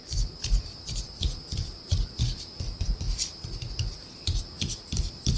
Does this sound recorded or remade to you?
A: recorded